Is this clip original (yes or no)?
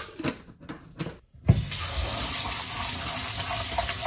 yes